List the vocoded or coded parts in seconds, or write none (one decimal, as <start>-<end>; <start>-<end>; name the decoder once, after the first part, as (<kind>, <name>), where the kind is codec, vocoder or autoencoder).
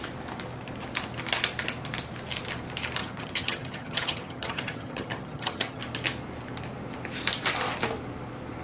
3.0-5.8 (vocoder, HiFi-GAN)